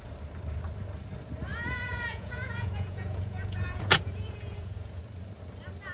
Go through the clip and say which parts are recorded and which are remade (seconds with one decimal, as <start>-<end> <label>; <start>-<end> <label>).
0.0-1.5 recorded; 1.5-5.0 remade; 5.0-5.9 recorded